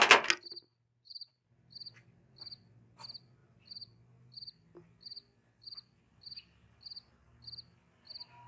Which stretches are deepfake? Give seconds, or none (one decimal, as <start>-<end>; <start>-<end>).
0.7-1.3